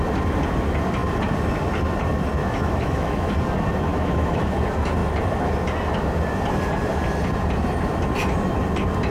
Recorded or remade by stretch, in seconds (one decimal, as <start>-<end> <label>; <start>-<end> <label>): 0.0-2.4 recorded; 2.4-3.3 remade; 3.3-3.9 recorded; 3.9-4.5 remade; 4.5-9.1 recorded